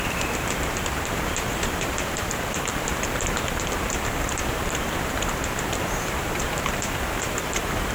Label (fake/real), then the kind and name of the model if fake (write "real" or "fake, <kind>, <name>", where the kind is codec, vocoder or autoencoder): fake, vocoder, BigVGAN v2